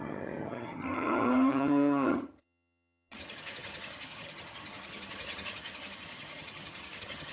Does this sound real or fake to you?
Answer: fake